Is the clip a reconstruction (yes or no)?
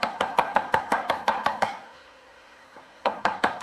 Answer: yes